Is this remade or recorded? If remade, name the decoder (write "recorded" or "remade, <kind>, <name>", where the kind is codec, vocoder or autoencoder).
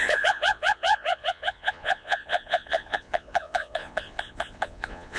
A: remade, vocoder, Vocos